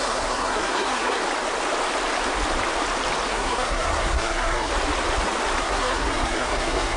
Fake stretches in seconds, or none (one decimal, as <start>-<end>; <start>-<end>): 0.0-1.2; 3.3-4.7; 5.6-7.0

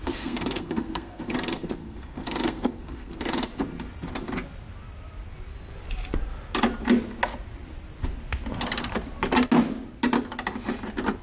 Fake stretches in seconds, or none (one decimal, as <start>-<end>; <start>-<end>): 0.0-3.5

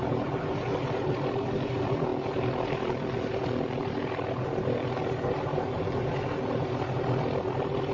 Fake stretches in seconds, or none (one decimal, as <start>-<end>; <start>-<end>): none

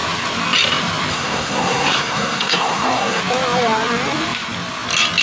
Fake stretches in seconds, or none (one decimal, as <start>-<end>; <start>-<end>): 1.1-3.2

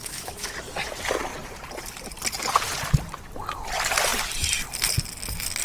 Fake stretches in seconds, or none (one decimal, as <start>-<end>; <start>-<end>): 0.0-0.5

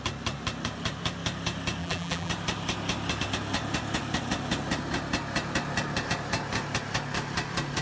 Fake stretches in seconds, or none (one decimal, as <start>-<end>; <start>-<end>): 1.8-2.3

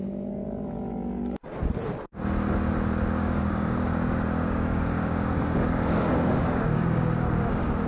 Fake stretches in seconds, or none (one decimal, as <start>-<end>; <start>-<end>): 0.0-0.4; 3.2-7.9

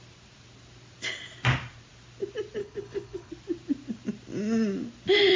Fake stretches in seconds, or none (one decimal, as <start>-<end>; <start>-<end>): 2.6-3.3